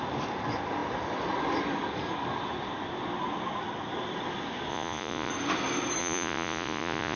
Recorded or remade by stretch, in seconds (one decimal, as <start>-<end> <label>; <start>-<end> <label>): 0.0-4.7 recorded; 4.7-5.3 remade; 5.3-6.0 recorded; 6.0-7.2 remade